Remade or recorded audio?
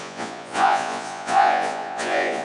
remade